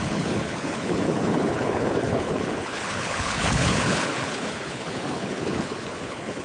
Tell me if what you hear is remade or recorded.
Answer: remade